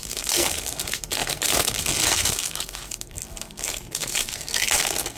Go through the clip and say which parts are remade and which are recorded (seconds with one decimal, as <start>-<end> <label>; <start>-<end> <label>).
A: 0.0-5.2 remade